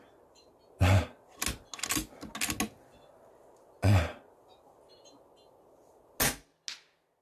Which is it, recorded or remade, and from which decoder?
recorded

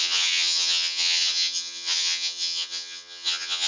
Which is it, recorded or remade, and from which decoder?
remade, vocoder, HiFi-GAN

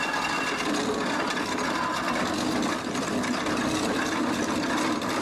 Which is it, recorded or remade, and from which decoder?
recorded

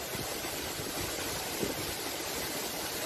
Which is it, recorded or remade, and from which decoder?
remade, vocoder, BigVGAN v2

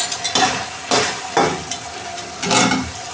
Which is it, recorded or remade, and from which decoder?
recorded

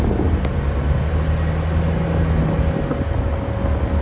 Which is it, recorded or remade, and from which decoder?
recorded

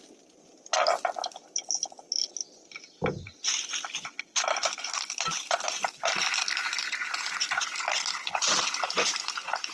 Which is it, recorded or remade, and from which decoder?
recorded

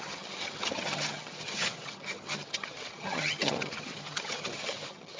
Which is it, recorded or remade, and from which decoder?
remade, vocoder, HiFi-GAN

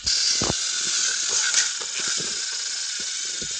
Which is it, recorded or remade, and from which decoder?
recorded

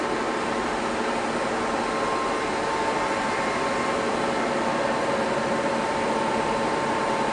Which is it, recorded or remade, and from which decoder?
recorded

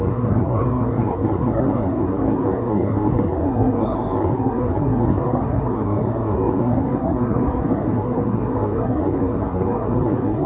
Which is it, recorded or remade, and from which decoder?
remade, codec, SNAC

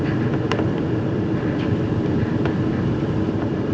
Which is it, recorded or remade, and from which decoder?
remade, vocoder, BigVGAN v2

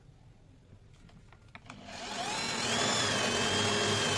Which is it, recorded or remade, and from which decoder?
recorded